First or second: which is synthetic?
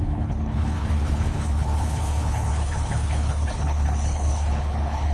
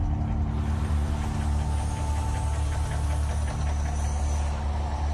first